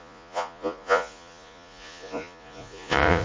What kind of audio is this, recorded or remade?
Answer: remade